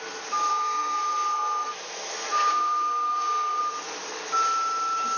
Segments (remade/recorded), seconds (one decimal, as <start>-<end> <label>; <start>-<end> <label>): 0.0-0.5 recorded; 0.5-3.6 remade; 3.6-5.2 recorded